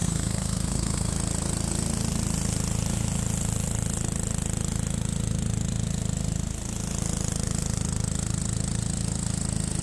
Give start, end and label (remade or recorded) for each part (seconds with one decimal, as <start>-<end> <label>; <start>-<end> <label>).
0.0-1.1 remade; 1.1-9.8 recorded

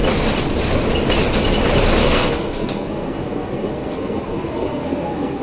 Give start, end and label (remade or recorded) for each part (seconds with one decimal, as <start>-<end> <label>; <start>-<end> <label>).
0.0-2.0 recorded; 2.0-5.4 remade